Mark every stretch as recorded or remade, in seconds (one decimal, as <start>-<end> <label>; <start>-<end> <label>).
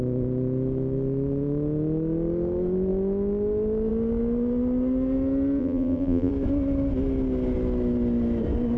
0.0-5.6 recorded; 5.6-6.3 remade; 6.3-8.8 recorded